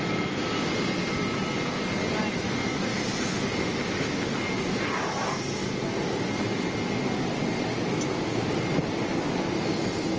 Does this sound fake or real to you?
real